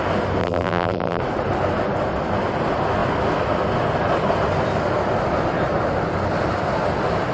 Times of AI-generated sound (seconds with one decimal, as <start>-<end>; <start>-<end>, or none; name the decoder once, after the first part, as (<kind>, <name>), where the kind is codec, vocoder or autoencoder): 0.4-1.2 (vocoder, BigVGAN v2)